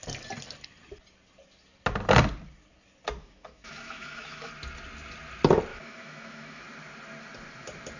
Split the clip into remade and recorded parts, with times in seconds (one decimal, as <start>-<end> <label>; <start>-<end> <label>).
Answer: 0.0-3.2 recorded; 3.2-4.5 remade; 4.5-5.7 recorded; 5.7-6.6 remade; 6.6-8.0 recorded